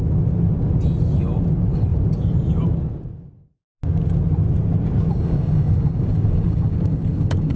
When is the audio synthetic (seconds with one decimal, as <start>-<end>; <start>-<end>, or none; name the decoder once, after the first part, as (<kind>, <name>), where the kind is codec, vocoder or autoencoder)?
5.1-7.6 (codec, DAC)